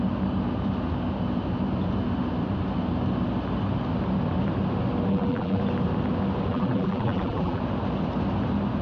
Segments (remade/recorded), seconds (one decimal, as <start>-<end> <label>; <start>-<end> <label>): 0.0-5.1 recorded; 5.1-5.6 remade; 5.6-6.5 recorded; 6.5-7.6 remade; 7.6-8.8 recorded